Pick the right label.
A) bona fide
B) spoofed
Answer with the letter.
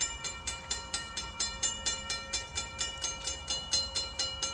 B